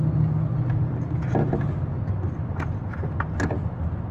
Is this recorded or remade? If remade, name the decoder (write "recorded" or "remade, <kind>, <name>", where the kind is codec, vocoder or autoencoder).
recorded